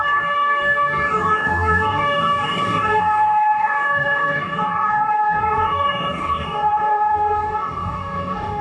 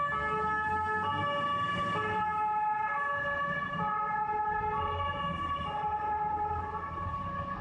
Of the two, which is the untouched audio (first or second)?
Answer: second